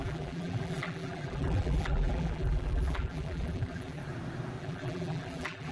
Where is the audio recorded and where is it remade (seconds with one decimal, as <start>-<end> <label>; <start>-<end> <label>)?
0.0-4.0 remade; 4.0-4.6 recorded; 4.6-5.7 remade